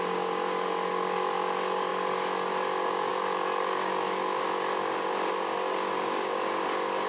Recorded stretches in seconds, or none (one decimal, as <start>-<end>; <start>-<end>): none